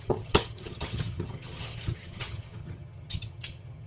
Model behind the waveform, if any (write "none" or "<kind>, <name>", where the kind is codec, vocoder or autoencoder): vocoder, HiFi-GAN